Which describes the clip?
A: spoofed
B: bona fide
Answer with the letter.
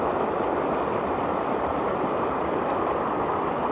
B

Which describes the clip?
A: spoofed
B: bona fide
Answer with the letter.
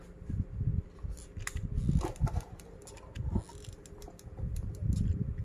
B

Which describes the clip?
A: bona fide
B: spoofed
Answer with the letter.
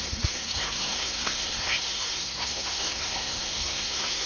B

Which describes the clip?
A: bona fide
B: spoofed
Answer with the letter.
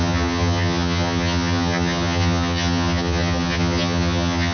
B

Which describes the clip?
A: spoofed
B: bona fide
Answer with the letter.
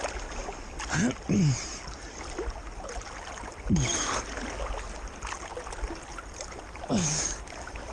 B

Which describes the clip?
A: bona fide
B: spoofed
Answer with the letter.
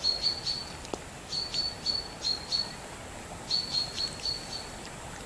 A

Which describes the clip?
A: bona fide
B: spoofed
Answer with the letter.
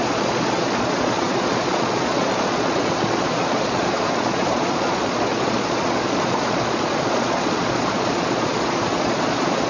B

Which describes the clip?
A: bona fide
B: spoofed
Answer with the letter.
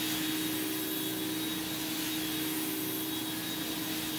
A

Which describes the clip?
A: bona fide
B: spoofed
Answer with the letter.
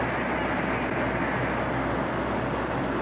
A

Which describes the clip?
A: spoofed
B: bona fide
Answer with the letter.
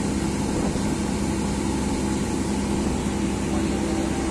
B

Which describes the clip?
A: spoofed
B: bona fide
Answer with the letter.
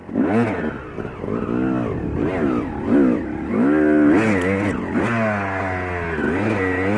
B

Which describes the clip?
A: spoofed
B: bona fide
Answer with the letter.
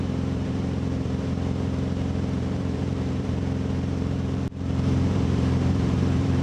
A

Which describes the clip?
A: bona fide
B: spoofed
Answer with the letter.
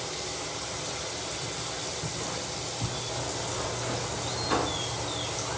A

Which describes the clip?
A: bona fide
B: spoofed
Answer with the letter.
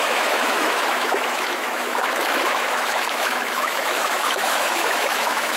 B